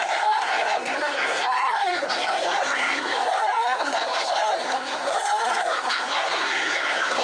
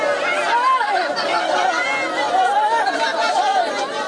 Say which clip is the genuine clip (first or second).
second